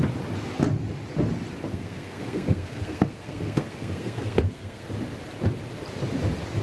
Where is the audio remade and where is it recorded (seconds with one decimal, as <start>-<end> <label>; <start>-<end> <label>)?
0.0-1.7 recorded; 1.7-4.9 remade; 4.9-6.6 recorded

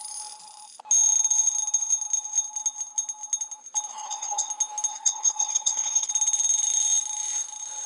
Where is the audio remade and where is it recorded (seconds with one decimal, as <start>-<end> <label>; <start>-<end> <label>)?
0.0-3.9 recorded; 3.9-4.5 remade; 4.5-4.9 recorded; 4.9-6.1 remade; 6.1-7.9 recorded

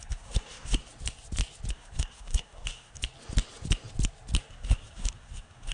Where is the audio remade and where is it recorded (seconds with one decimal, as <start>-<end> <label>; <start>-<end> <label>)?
0.0-0.8 remade; 0.8-1.7 recorded; 1.7-3.0 remade; 3.0-4.5 recorded; 4.5-5.7 remade

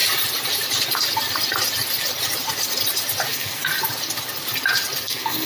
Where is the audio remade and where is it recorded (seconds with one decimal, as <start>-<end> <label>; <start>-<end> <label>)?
0.0-3.3 recorded; 3.3-3.7 remade; 3.7-5.0 recorded; 5.0-5.5 remade

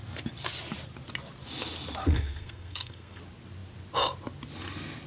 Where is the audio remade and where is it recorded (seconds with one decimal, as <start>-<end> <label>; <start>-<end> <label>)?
0.0-2.0 recorded; 2.0-3.2 remade; 3.2-5.1 recorded